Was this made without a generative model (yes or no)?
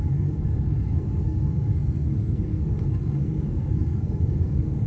no